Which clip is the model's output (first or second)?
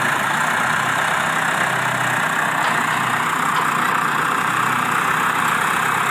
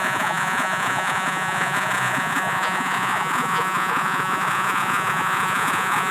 second